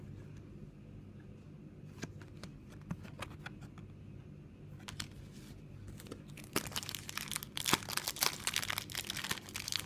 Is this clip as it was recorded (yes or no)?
yes